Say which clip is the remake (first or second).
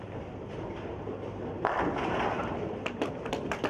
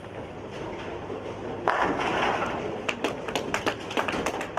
first